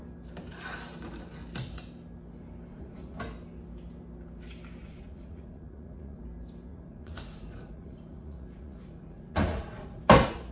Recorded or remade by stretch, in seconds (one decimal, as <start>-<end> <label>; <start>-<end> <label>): 0.0-2.7 recorded; 2.7-3.2 remade; 3.2-4.8 recorded; 4.8-6.2 remade; 6.2-6.7 recorded; 6.7-10.0 remade; 10.0-10.5 recorded